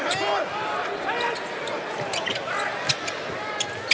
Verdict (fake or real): real